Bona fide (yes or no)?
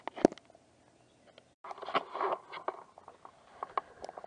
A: yes